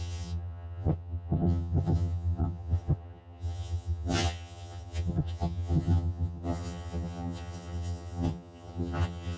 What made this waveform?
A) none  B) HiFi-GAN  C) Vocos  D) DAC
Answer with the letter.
B